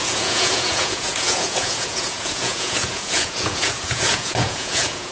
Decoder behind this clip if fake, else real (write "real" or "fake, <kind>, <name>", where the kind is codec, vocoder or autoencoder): fake, vocoder, Vocos